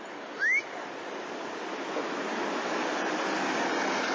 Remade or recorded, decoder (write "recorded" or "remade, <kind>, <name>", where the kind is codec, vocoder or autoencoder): recorded